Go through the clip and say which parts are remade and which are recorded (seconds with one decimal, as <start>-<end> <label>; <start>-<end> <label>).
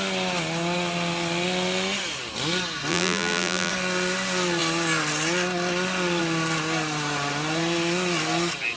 0.0-2.9 recorded; 2.9-3.7 remade; 3.7-8.8 recorded